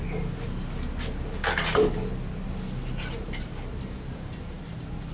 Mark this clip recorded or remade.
recorded